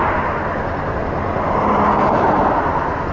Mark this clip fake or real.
real